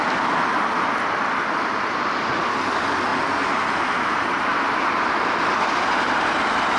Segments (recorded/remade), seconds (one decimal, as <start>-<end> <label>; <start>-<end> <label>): 0.0-6.8 recorded